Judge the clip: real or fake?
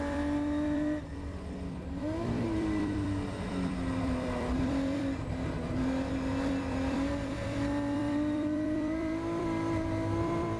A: fake